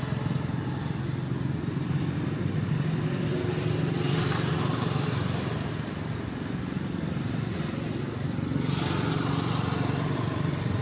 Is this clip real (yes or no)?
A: yes